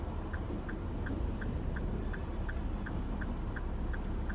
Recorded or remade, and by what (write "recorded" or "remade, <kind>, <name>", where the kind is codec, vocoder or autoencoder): recorded